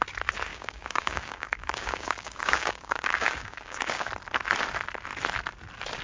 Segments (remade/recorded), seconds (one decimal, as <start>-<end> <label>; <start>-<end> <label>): 0.0-0.5 recorded; 0.5-4.1 remade; 4.1-6.0 recorded